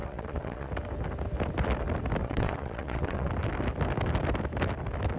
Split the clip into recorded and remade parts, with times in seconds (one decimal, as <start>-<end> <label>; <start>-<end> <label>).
0.0-0.7 remade; 0.7-2.2 recorded; 2.2-3.3 remade; 3.3-5.2 recorded